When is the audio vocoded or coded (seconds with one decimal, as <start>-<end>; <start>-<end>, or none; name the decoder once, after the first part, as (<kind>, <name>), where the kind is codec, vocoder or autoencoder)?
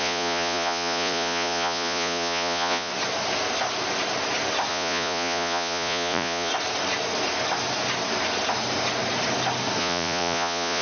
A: 0.0-2.9 (vocoder, Vocos); 4.7-6.5; 9.8-10.8